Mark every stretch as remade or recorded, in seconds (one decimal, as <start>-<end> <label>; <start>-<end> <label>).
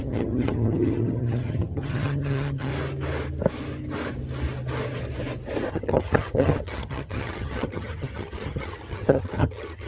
0.0-2.7 remade; 2.7-5.7 recorded; 5.7-9.9 remade